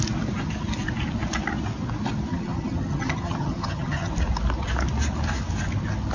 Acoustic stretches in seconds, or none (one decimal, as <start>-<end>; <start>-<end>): 0.0-2.3; 4.1-6.1